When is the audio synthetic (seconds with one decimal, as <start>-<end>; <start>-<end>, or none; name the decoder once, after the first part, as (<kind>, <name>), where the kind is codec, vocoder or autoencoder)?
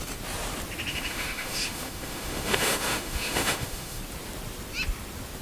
0.9-4.0 (autoencoder, DAC-VAE)